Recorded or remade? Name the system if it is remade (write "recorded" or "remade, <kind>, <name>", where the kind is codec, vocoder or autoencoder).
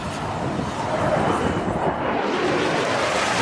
remade, vocoder, BigVGAN v2